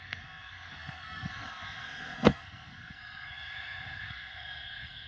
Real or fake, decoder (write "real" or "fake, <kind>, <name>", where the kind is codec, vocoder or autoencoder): fake, codec, SNAC